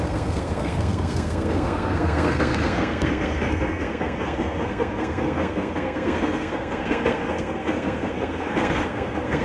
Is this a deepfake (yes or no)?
yes